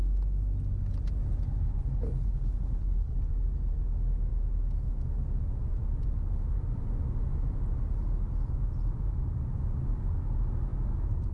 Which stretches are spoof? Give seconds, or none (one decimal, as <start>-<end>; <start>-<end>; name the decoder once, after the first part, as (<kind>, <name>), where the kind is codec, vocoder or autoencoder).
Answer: 1.6-3.2 (codec, HILCodec)